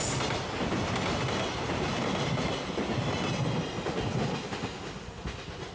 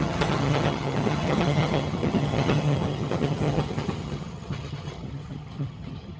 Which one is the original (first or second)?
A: first